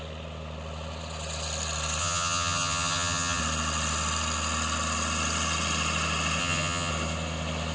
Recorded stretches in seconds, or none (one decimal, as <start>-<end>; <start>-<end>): 0.0-2.0; 3.4-6.4; 6.9-7.7